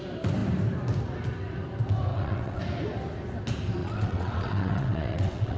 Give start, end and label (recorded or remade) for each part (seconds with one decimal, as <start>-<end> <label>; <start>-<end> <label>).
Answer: 0.0-2.1 recorded; 2.1-2.6 remade; 2.6-3.8 recorded; 3.8-5.6 remade